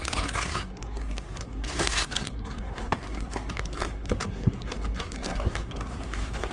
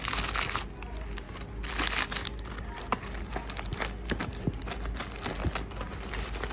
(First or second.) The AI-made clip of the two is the first